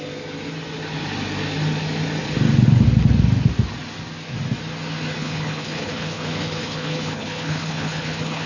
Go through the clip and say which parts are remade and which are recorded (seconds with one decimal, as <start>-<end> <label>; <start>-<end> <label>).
0.0-5.2 recorded; 5.2-8.5 remade